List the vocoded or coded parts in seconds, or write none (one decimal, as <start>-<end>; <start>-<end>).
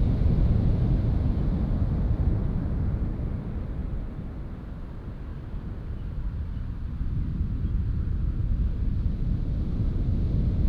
none